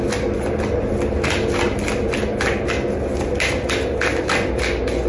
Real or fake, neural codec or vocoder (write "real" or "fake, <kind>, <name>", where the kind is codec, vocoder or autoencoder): real